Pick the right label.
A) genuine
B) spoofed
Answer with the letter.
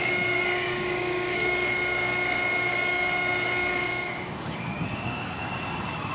B